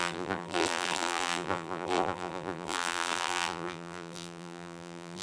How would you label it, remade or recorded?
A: remade